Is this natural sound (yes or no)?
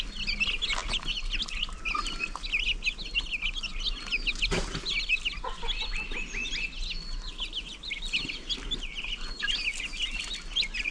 yes